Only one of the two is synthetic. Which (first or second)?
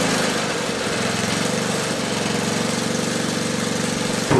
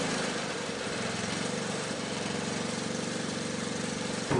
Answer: second